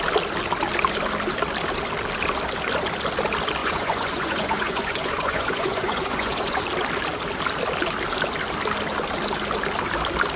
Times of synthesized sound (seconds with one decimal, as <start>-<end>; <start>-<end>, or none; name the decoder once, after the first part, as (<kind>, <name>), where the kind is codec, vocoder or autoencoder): 3.6-6.6 (vocoder, Vocos)